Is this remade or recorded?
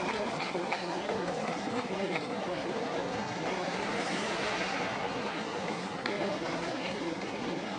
remade